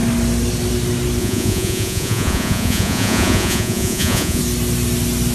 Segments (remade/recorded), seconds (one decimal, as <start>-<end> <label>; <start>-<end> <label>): 0.0-1.2 recorded; 1.2-4.4 remade; 4.4-5.3 recorded